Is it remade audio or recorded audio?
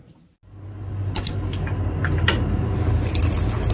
recorded